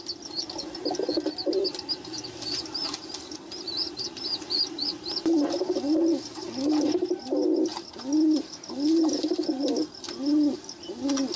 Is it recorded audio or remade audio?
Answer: recorded